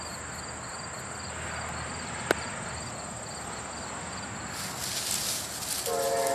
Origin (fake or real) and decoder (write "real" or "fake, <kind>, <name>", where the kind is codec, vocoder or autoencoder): real